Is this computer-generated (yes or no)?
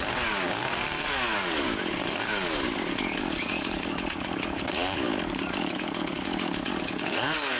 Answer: yes